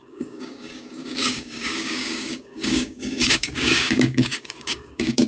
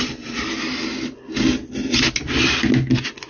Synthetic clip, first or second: first